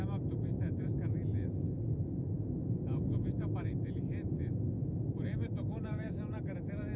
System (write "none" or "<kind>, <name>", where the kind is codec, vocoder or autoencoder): vocoder, Vocos